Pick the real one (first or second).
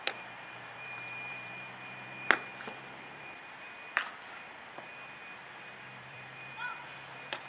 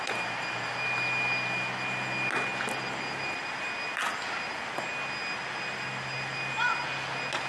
second